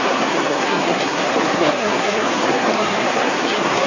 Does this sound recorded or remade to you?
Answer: remade